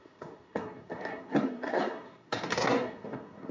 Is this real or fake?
fake